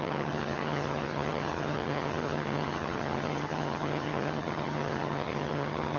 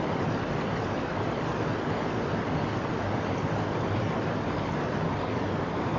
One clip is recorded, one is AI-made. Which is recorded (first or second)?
second